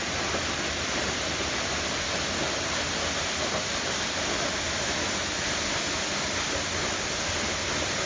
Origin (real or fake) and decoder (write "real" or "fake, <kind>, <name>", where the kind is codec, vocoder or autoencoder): real